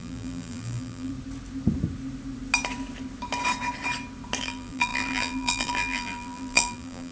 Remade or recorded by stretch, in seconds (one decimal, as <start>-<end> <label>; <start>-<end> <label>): 0.0-1.1 remade; 1.1-4.4 recorded; 4.4-7.1 remade